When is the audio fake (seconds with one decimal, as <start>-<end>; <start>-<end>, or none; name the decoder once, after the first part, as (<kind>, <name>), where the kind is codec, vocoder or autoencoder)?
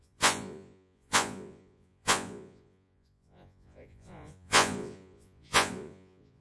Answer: 0.0-6.4 (vocoder, Vocos)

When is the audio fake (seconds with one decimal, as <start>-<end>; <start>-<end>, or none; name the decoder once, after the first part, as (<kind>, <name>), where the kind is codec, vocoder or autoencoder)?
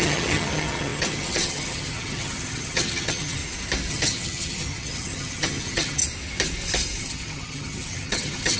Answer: 0.0-3.4 (vocoder, HiFi-GAN); 3.9-6.0; 7.0-8.6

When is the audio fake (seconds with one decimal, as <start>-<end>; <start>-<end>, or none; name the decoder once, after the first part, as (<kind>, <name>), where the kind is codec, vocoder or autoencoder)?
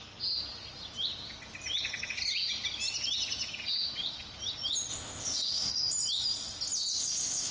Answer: 4.9-5.7 (codec, ZipCodec); 7.0-7.5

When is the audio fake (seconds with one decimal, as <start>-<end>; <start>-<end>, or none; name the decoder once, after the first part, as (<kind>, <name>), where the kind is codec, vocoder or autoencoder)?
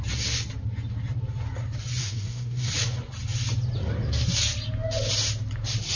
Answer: 2.0-2.7 (codec, SNAC)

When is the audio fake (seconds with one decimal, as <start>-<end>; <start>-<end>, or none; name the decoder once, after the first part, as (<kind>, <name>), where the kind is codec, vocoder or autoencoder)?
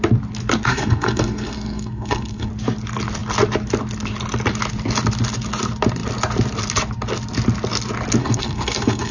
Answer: 0.7-2.5 (codec, SNAC); 8.2-9.1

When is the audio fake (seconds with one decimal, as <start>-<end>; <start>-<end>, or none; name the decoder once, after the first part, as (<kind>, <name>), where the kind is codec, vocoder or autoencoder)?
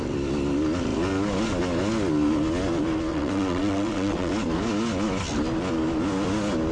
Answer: 3.1-4.3 (vocoder, WaveNeXt)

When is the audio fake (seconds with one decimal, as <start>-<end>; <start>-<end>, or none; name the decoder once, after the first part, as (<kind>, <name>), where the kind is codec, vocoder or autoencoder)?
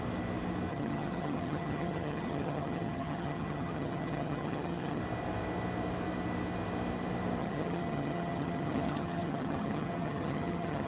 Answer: 0.7-5.0 (vocoder, HiFi-GAN); 7.4-10.9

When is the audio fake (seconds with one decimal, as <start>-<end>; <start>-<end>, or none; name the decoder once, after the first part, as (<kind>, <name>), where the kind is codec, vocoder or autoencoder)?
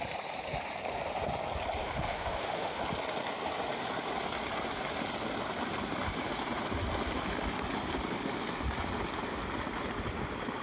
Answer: 1.8-2.8 (autoencoder, DAC-VAE)